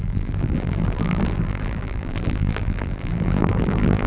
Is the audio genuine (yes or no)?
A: no